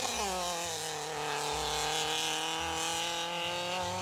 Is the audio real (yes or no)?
yes